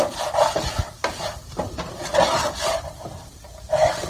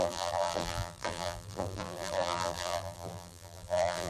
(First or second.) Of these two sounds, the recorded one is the first